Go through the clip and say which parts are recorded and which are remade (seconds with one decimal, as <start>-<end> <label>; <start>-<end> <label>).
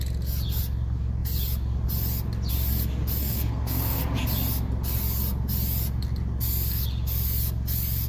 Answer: 0.0-3.2 recorded; 3.2-4.0 remade; 4.0-8.1 recorded